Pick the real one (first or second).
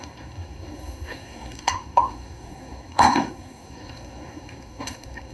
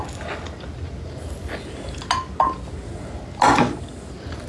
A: second